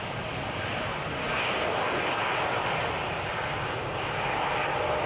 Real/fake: real